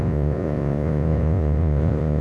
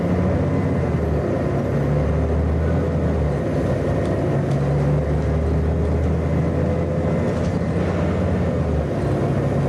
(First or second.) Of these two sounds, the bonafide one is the second